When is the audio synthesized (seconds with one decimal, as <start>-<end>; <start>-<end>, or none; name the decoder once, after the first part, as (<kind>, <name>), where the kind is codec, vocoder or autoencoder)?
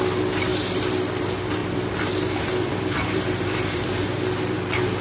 1.6-4.0 (vocoder, BigVGAN v2)